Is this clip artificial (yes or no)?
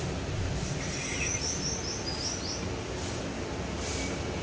no